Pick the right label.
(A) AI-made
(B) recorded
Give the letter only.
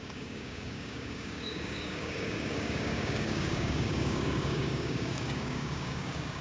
A